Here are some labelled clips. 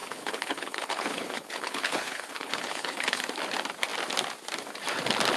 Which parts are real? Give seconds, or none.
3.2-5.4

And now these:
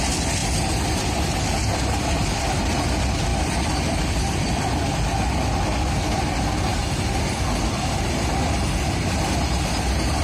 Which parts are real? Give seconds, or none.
0.0-10.2

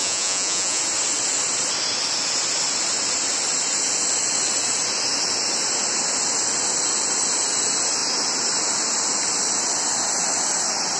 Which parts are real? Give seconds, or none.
0.8-11.0